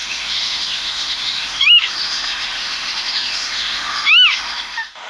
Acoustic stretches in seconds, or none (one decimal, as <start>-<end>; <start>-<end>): none